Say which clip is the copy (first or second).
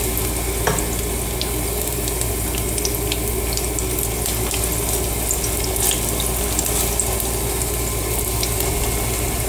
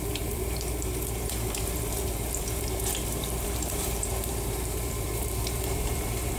second